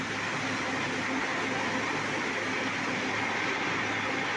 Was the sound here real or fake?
real